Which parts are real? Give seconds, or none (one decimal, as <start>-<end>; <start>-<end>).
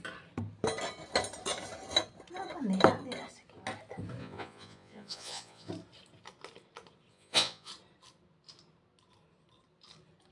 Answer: 0.0-4.2; 5.7-7.1; 7.7-10.3